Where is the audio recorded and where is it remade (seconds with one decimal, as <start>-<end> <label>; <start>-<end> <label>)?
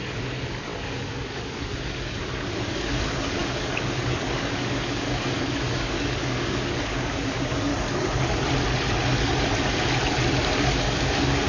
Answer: 0.0-7.7 remade; 7.7-10.5 recorded; 10.5-11.5 remade